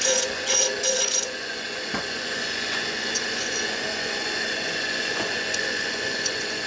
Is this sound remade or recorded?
remade